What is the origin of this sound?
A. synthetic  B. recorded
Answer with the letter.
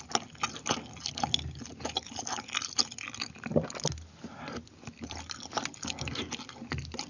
B